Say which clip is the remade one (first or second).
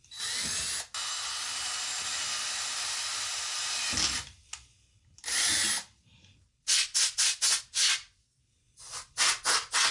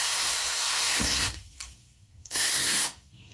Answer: second